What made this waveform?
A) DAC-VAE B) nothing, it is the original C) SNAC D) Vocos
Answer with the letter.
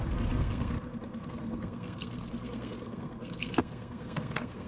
C